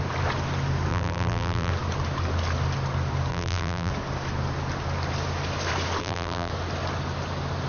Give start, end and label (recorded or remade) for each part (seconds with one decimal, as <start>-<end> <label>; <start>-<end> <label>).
0.0-0.9 recorded; 0.9-1.7 remade; 1.7-3.3 recorded; 3.3-3.9 remade; 3.9-6.0 recorded; 6.0-6.5 remade; 6.5-7.7 recorded